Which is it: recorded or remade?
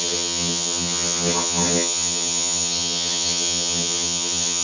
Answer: remade